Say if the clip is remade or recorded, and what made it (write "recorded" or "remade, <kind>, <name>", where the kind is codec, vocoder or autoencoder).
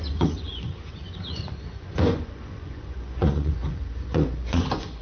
remade, vocoder, Vocos